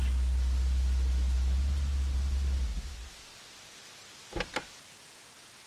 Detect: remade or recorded recorded